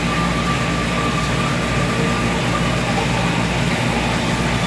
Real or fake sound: real